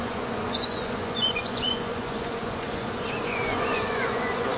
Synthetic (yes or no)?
yes